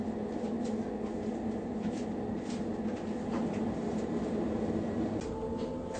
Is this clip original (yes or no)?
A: yes